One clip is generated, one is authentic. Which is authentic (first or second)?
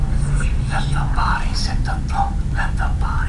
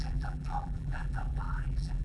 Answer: first